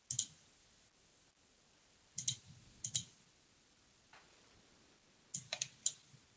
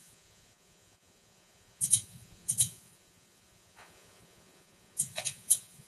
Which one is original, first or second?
first